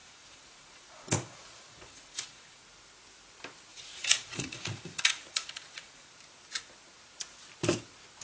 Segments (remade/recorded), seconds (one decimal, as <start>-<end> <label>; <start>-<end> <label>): 0.0-2.6 remade; 2.6-3.7 recorded; 3.7-6.1 remade; 6.1-8.2 recorded

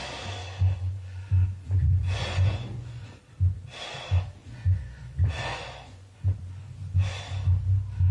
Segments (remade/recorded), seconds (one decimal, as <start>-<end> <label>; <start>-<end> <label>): 0.0-0.4 recorded; 0.4-3.2 remade; 3.2-4.4 recorded; 4.4-7.2 remade; 7.2-8.1 recorded

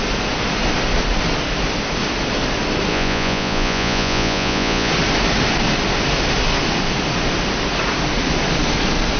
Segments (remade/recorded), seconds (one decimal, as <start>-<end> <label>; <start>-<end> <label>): 0.0-2.9 recorded; 2.9-4.9 remade; 4.9-9.2 recorded

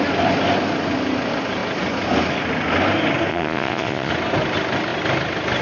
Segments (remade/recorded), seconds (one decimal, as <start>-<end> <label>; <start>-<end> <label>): 0.0-3.3 recorded; 3.3-4.1 remade; 4.1-5.6 recorded

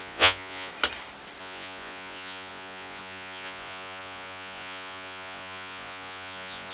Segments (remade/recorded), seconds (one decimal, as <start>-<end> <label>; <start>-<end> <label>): 0.0-0.7 remade; 0.7-1.4 recorded; 1.4-6.7 remade